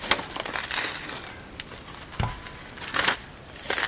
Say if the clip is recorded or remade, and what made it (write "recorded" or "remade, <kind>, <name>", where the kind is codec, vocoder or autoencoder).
recorded